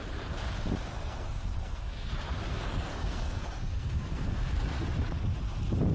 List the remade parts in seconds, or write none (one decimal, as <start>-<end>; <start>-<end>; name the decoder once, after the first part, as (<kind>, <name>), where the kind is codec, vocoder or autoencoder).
0.9-2.1 (codec, SNAC); 2.5-4.8